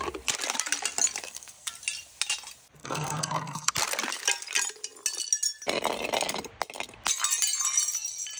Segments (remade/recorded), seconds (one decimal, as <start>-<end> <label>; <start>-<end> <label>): 0.0-1.2 recorded; 1.2-1.7 remade; 1.7-2.8 recorded; 2.8-3.7 remade; 3.7-8.4 recorded

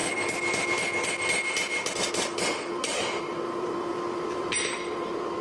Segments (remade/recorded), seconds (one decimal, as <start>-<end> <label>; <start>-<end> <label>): 0.0-3.2 recorded; 3.2-5.4 remade

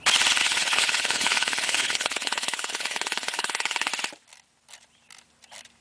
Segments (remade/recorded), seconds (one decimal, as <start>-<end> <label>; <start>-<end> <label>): 0.0-0.4 recorded; 0.4-3.9 remade; 3.9-5.8 recorded

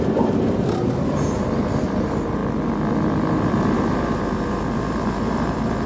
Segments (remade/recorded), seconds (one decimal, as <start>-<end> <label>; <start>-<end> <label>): 0.0-2.4 remade; 2.4-3.3 recorded; 3.3-5.9 remade

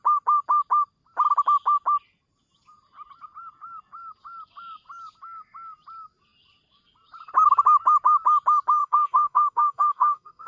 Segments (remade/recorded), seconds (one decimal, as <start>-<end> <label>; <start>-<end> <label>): 0.0-8.8 recorded; 8.8-10.5 remade

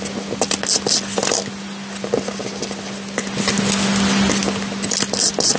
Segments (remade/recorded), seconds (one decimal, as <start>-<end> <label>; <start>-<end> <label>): 0.0-5.6 recorded

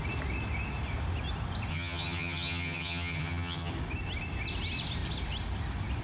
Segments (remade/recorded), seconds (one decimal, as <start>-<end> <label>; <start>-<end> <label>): 0.0-1.7 recorded; 1.7-3.7 remade; 3.7-6.0 recorded